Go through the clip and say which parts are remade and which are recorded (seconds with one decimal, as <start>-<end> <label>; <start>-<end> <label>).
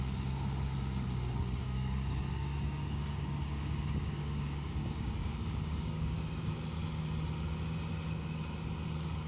0.0-1.6 recorded; 1.6-6.5 remade; 6.5-9.3 recorded